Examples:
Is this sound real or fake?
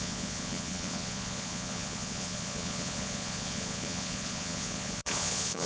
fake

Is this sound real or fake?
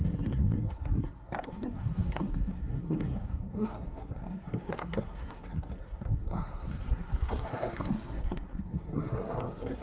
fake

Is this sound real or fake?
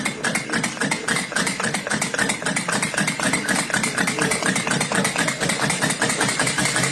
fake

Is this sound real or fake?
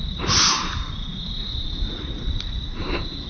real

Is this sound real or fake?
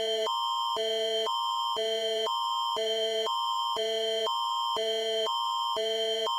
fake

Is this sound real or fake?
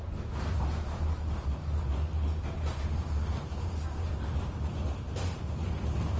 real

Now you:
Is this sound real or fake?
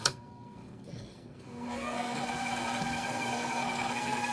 fake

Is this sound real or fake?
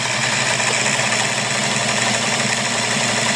real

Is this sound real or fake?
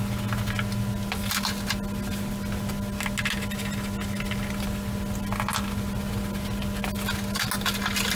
real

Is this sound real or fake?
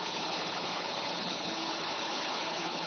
fake